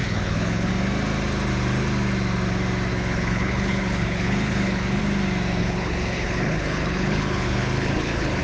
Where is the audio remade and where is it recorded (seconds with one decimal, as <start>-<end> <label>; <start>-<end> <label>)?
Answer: 0.0-0.7 remade; 0.7-2.9 recorded; 2.9-5.0 remade; 5.0-5.6 recorded; 5.6-8.4 remade